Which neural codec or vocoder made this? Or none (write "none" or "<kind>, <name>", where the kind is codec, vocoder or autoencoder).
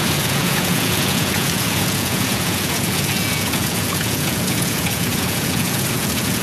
vocoder, Vocos